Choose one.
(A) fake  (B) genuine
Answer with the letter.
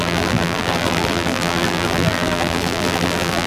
A